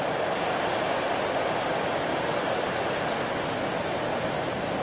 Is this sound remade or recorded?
recorded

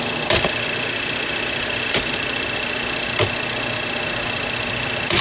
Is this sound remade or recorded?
recorded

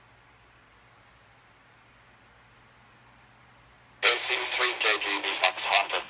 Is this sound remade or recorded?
recorded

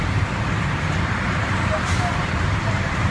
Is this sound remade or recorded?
remade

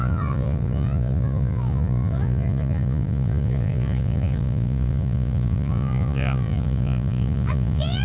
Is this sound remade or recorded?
remade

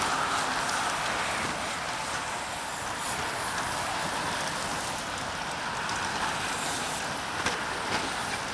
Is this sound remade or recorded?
recorded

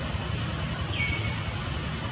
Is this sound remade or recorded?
recorded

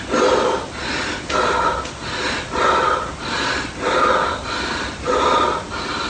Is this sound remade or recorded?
recorded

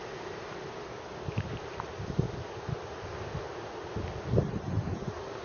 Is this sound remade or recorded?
recorded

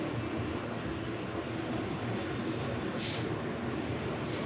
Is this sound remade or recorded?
recorded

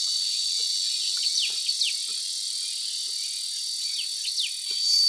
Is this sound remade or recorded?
recorded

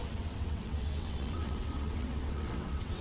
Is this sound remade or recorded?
remade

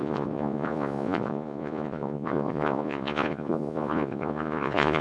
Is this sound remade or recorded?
remade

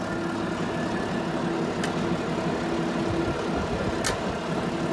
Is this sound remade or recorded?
recorded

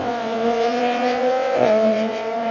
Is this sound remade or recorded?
remade